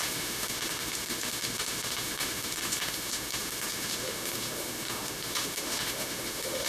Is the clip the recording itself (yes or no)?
no